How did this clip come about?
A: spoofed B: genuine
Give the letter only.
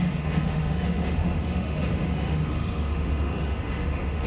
A